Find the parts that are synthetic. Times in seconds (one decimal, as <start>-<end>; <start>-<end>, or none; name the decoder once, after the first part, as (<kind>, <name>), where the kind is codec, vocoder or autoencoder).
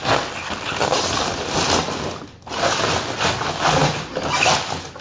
none